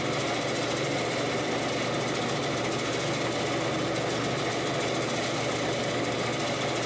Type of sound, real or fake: real